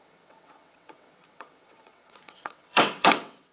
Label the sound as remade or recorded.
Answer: remade